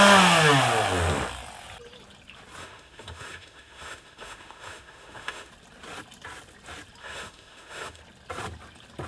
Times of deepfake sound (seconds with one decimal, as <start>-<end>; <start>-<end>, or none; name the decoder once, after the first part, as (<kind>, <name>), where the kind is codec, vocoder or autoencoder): 2.6-5.5 (autoencoder, DAC-VAE); 7.0-8.0